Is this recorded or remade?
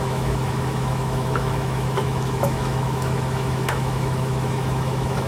remade